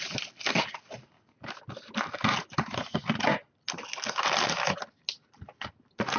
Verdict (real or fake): real